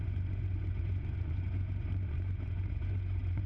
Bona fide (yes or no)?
no